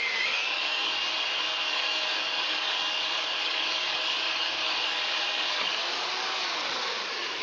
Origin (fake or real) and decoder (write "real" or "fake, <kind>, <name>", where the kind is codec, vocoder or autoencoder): fake, codec, DAC